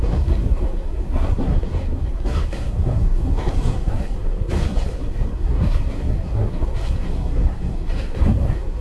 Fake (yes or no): yes